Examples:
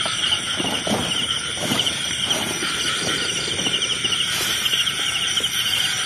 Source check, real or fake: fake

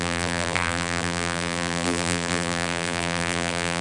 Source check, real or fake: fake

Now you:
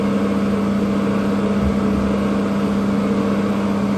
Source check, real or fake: real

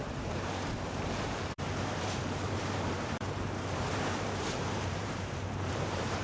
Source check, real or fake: fake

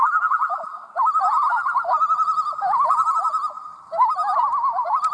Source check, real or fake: real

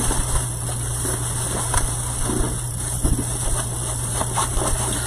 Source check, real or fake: fake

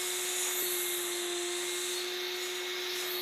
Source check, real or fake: real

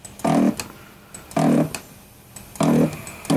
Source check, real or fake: real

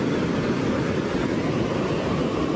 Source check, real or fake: real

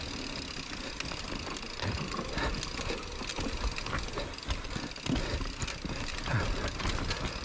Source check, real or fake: real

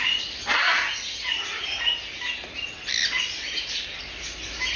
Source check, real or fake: real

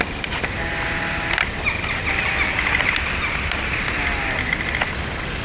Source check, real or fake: real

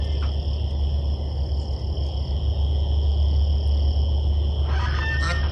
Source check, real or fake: real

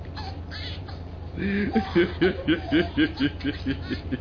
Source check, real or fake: fake